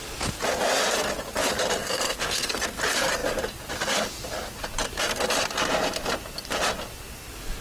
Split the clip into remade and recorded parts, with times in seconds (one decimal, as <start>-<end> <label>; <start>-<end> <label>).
0.0-1.8 recorded; 1.8-2.8 remade; 2.8-7.6 recorded